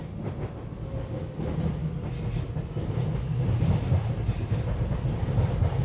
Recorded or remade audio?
recorded